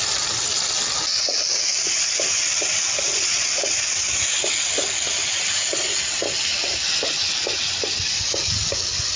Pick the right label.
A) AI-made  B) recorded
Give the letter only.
B